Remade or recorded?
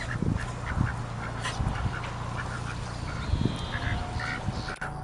recorded